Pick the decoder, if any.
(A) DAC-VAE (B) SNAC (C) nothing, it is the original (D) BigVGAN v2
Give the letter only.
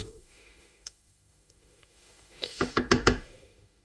A